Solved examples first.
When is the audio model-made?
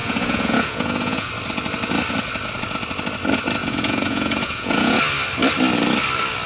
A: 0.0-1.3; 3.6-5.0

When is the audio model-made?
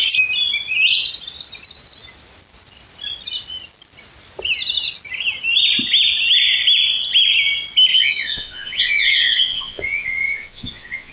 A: 7.9-11.1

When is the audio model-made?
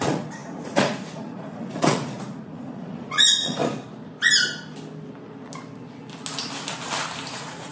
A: 0.0-3.6; 7.3-7.7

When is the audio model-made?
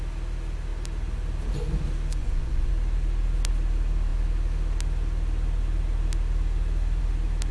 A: 2.2-2.7